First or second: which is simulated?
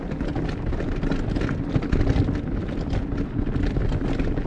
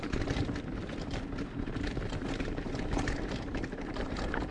second